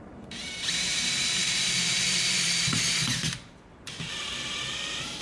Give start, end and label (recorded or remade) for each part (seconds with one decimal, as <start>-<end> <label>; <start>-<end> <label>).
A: 0.0-5.2 remade